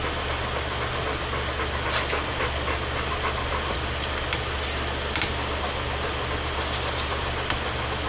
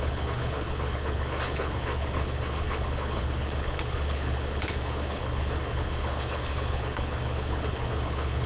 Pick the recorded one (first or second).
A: first